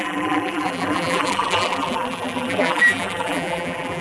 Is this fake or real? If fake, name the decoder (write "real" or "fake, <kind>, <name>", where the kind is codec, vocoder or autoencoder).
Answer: fake, vocoder, BigVGAN v2